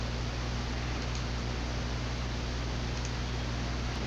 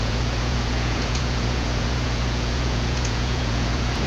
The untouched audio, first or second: first